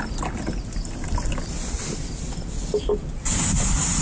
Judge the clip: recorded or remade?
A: recorded